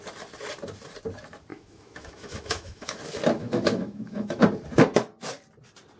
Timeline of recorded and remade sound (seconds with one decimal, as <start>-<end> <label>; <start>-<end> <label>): 0.0-1.5 recorded; 1.5-3.0 remade; 3.0-3.4 recorded; 3.4-4.4 remade; 4.4-6.0 recorded